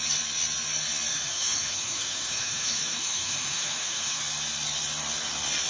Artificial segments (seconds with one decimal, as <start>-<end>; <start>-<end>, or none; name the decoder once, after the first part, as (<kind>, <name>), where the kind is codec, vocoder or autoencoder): 1.1-4.2 (autoencoder, DAC-VAE)

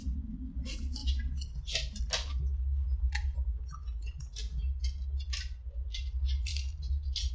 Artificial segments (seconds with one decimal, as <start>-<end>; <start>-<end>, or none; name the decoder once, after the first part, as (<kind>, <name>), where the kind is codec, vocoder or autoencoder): none

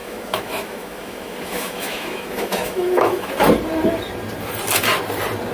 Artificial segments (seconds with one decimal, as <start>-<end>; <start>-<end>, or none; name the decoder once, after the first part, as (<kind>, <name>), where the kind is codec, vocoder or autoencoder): 0.0-3.3 (autoencoder, DAC-VAE)

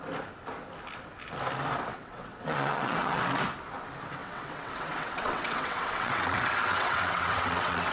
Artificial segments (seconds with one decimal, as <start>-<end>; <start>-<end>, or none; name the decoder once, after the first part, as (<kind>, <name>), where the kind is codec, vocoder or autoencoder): 1.9-3.2 (vocoder, WaveNeXt); 4.2-7.9

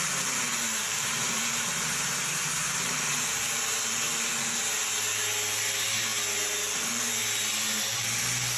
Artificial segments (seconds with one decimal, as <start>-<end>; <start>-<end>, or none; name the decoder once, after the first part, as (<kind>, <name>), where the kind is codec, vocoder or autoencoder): 0.5-3.7 (vocoder, BigVGAN v2)

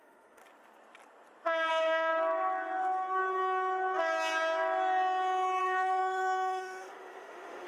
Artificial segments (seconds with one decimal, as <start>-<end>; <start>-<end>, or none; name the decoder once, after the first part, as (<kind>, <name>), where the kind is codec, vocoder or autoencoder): 0.0-0.4 (autoencoder, DAC-VAE); 1.7-2.1; 5.6-7.7